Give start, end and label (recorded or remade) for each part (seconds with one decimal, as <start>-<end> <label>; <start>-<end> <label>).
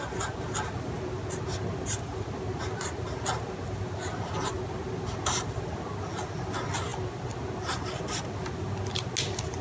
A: 0.0-9.6 recorded